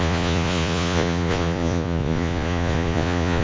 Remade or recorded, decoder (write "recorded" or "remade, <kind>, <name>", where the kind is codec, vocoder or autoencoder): remade, vocoder, Vocos